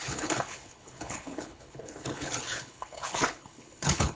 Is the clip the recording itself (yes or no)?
no